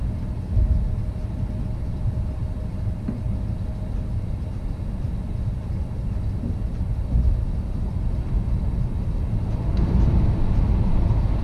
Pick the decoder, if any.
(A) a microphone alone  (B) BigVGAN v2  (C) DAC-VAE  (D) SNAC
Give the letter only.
A